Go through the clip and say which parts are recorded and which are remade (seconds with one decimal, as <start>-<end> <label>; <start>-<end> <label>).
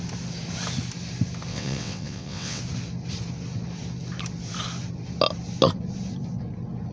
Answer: 0.0-1.5 recorded; 1.5-2.6 remade; 2.6-6.9 recorded